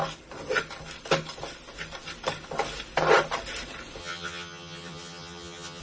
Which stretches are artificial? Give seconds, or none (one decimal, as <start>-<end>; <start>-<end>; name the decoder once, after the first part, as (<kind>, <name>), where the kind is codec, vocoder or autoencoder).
4.0-5.8 (vocoder, HiFi-GAN)